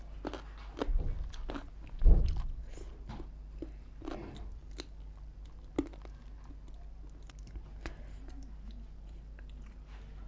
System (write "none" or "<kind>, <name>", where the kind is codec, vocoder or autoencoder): none